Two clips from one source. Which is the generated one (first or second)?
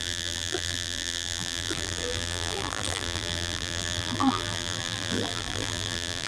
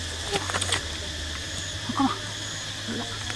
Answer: first